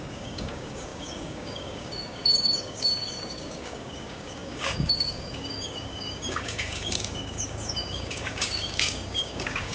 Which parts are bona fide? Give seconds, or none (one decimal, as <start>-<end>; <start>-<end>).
none